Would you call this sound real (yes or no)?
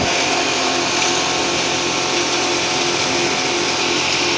yes